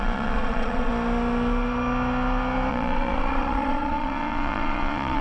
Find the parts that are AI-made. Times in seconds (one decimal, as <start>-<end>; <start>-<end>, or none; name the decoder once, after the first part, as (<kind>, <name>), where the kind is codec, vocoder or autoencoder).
0.0-0.9 (vocoder, Vocos); 2.7-5.2